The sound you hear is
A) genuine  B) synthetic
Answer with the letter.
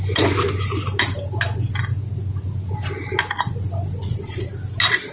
A